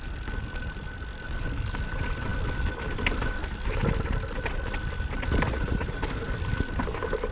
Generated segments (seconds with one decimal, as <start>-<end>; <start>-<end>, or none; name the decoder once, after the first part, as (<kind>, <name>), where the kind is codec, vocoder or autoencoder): 5.5-6.0 (vocoder, Vocos)